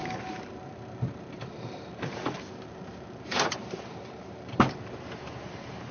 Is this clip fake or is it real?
fake